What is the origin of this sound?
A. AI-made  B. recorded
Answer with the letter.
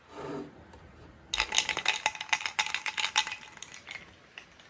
B